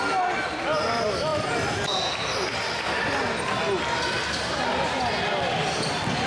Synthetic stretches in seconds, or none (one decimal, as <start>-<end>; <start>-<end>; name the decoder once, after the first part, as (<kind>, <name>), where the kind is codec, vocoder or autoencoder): none